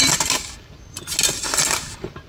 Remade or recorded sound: recorded